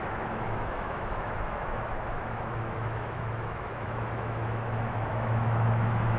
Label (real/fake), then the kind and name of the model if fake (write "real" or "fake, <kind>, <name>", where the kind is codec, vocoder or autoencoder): fake, autoencoder, DAC-VAE